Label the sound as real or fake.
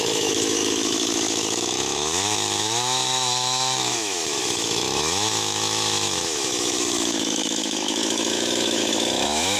fake